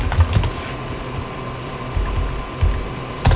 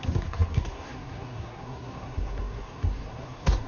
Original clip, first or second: first